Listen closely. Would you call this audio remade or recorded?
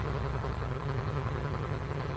remade